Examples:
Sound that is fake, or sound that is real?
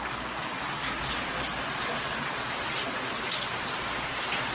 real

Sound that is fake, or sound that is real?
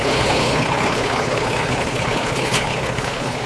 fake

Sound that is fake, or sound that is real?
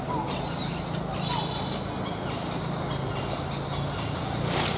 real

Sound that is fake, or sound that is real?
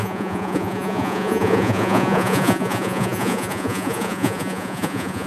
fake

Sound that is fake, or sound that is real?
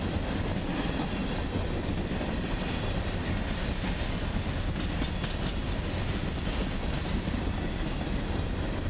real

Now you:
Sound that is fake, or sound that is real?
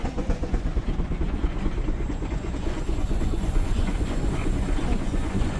fake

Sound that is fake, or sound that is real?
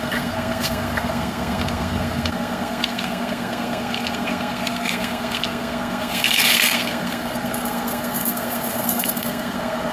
fake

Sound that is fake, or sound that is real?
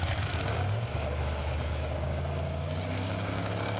fake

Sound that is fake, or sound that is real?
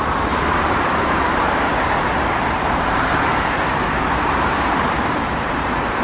fake